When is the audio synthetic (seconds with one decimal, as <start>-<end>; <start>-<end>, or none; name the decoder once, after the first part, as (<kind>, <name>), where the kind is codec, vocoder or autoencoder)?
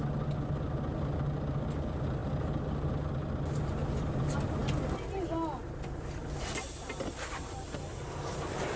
none